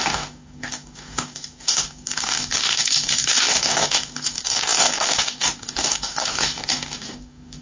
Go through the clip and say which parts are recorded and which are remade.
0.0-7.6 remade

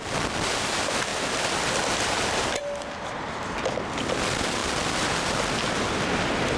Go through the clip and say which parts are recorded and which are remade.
0.0-6.6 recorded